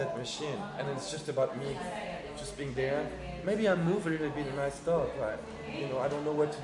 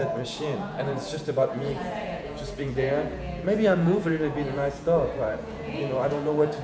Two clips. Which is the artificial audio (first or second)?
second